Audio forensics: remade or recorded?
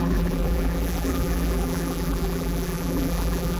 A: remade